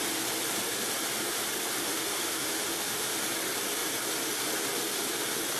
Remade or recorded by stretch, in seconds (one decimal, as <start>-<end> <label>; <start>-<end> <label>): 0.0-1.8 recorded; 1.8-3.2 remade; 3.2-5.6 recorded

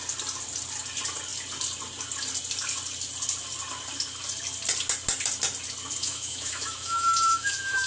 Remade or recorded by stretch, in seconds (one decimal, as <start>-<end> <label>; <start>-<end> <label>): 0.0-6.0 recorded; 6.0-7.9 remade

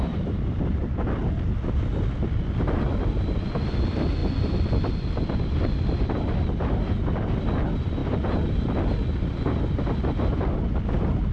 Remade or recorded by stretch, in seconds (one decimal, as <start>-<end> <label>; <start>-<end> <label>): 0.0-11.3 recorded

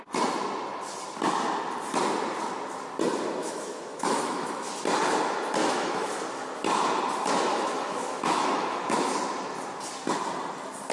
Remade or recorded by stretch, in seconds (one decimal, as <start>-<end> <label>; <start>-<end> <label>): 0.0-3.4 recorded; 3.4-4.7 remade; 4.7-5.6 recorded; 5.6-6.2 remade; 6.2-7.5 recorded; 7.5-9.2 remade; 9.2-10.9 recorded

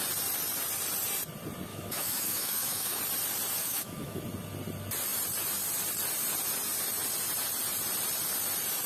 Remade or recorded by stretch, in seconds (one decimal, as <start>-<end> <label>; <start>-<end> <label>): 0.0-1.7 recorded; 1.7-3.0 remade; 3.0-3.6 recorded; 3.6-4.2 remade; 4.2-8.9 recorded

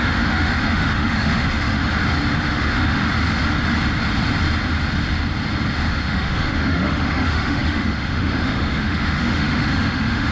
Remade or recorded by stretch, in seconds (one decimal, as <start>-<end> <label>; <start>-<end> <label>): 0.0-1.8 remade; 1.8-2.5 recorded; 2.5-3.0 remade; 3.0-5.9 recorded; 5.9-10.3 remade